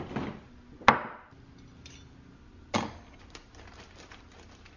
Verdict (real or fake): real